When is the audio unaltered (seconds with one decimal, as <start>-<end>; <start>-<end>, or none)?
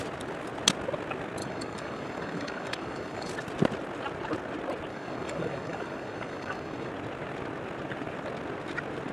0.0-1.4; 3.3-4.9; 6.9-9.1